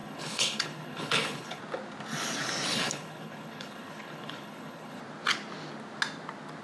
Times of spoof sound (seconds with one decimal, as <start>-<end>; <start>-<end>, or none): 0.0-1.6; 2.7-5.0